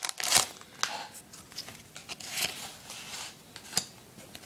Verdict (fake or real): real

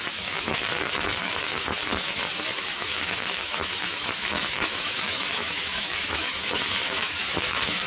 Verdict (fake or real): fake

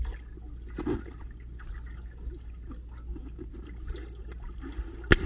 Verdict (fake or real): real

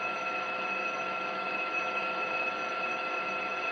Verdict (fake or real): fake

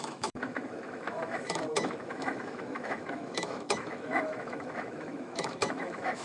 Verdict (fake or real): fake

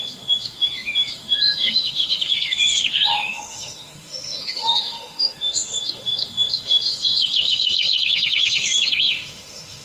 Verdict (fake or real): fake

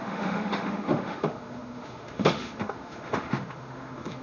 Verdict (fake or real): fake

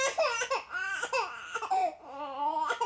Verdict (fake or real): real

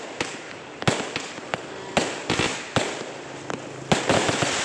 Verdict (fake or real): real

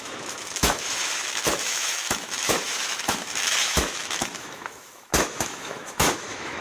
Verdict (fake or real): fake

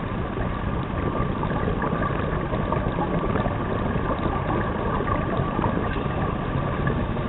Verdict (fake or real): real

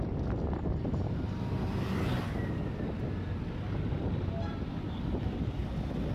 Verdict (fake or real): real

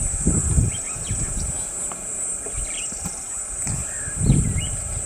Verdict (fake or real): real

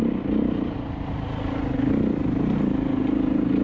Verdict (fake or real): real